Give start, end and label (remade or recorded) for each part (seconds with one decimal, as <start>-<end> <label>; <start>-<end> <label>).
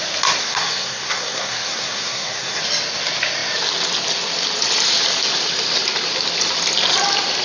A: 0.0-0.4 recorded; 0.4-2.6 remade; 2.6-7.4 recorded